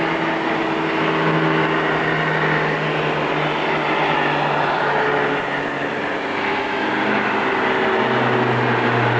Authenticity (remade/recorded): recorded